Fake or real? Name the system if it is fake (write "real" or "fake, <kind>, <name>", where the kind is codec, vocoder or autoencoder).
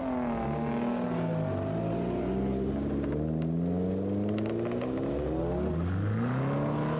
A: real